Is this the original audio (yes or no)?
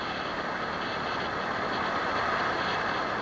yes